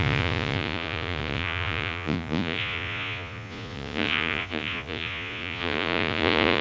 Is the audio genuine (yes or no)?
no